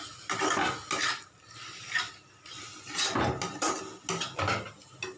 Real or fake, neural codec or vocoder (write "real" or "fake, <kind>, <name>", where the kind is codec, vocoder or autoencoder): real